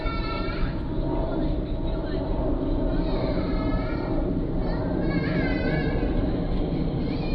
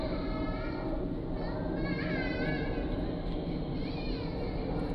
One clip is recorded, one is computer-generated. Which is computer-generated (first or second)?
first